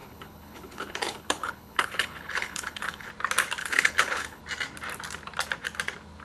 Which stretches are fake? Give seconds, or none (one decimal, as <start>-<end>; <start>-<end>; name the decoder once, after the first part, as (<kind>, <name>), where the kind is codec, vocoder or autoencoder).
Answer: 0.0-3.1 (codec, HILCodec); 3.6-4.4